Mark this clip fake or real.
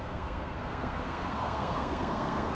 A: fake